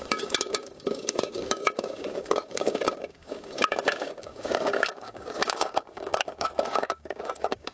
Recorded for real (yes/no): no